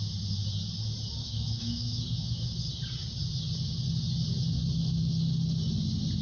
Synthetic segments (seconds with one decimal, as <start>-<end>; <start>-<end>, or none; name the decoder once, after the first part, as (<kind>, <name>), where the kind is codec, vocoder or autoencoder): 1.2-2.7 (autoencoder, DAC-VAE)